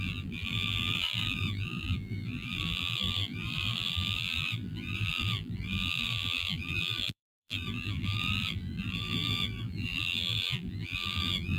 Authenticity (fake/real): fake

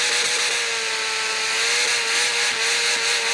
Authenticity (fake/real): real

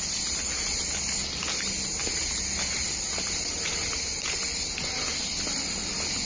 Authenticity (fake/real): real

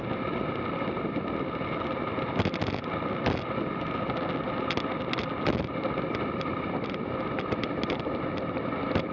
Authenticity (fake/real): real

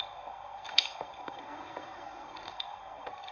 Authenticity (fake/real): fake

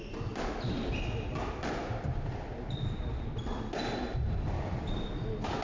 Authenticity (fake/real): real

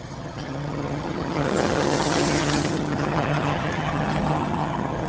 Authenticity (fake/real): fake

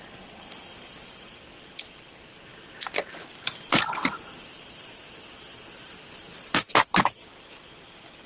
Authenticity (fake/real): real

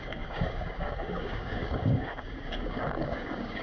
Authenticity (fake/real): fake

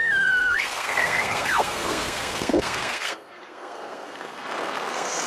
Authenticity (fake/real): fake